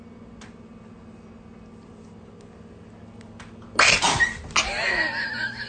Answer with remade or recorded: recorded